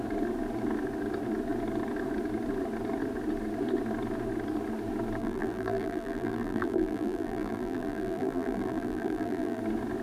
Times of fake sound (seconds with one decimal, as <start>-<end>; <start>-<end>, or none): 5.2-9.6

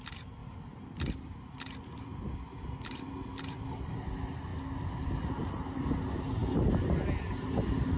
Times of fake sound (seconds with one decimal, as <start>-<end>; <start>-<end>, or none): none